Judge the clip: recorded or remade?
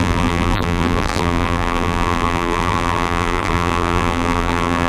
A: remade